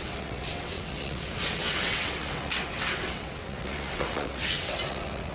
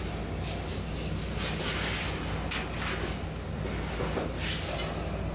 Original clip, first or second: second